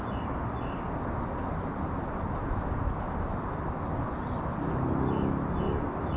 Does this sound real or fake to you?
real